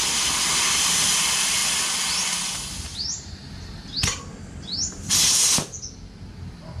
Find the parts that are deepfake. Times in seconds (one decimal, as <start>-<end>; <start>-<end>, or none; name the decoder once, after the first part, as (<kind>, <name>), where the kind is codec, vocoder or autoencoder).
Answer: none